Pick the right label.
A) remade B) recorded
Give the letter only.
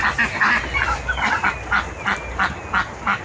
B